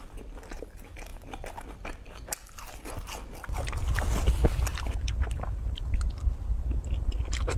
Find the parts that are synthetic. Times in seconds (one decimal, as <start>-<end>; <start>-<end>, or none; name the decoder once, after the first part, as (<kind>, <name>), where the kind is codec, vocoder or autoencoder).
none